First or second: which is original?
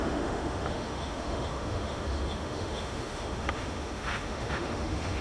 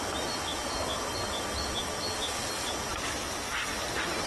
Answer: second